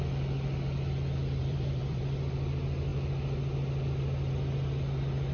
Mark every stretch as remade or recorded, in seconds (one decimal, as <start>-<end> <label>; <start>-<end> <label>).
0.0-1.4 recorded; 1.4-2.0 remade; 2.0-5.3 recorded